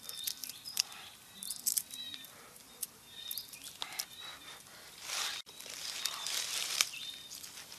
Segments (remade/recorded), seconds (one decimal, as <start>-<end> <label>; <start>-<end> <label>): 0.0-0.4 recorded; 0.4-3.0 remade; 3.0-4.3 recorded; 4.3-6.9 remade; 6.9-7.8 recorded